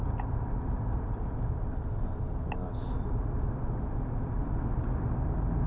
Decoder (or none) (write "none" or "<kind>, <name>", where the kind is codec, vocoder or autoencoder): none